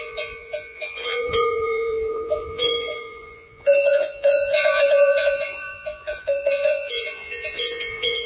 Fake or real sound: fake